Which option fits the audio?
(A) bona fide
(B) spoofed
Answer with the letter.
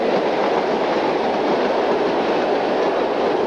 A